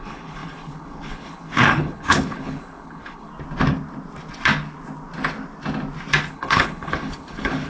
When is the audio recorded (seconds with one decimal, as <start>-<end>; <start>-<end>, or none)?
3.3-6.3